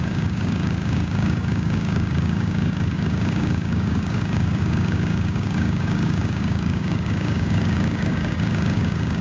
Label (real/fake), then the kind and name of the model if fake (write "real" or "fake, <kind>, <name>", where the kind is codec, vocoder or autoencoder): fake, codec, DAC